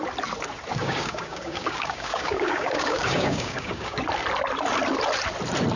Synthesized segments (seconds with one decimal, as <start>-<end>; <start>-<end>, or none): 0.7-4.0